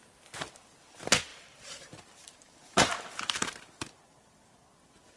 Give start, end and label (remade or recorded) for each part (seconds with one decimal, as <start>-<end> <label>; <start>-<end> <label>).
0.0-1.3 recorded; 1.3-4.4 remade; 4.4-5.2 recorded